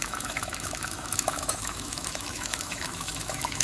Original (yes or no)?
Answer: no